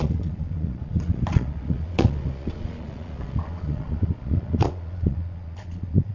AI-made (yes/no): yes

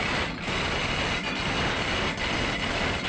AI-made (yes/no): no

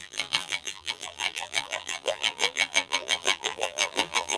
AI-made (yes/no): yes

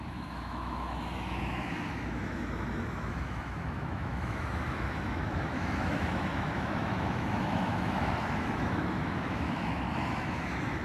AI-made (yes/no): yes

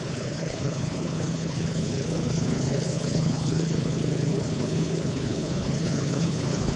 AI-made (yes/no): yes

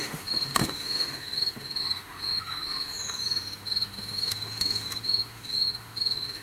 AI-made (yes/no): yes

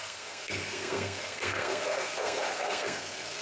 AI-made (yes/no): yes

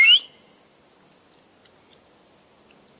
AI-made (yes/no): no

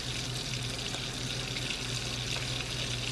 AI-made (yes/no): no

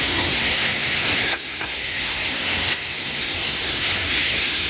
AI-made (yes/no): yes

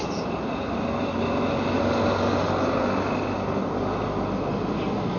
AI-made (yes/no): no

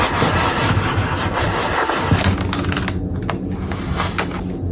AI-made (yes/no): no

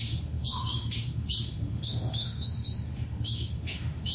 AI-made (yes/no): yes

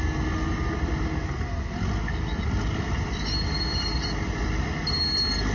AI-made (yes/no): no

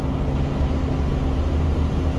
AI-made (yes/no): no